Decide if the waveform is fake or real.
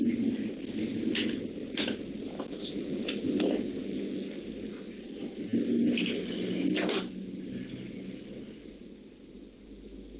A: real